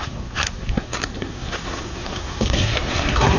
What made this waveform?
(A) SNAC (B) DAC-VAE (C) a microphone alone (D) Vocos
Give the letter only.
A